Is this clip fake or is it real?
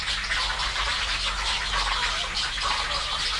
real